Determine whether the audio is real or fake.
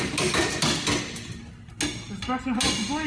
real